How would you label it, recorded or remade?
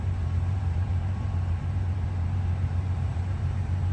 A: remade